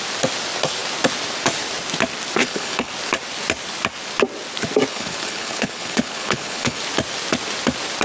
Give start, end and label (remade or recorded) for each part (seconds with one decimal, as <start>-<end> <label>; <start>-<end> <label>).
0.0-2.4 recorded; 2.4-2.9 remade; 2.9-4.9 recorded; 4.9-6.8 remade; 6.8-8.0 recorded